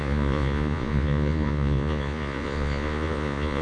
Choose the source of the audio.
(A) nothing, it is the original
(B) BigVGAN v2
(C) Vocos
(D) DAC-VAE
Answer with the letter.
C